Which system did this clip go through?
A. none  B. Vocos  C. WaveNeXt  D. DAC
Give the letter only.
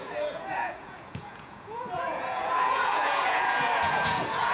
B